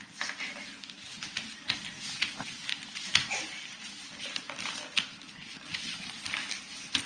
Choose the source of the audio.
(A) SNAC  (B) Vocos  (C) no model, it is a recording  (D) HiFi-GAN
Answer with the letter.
C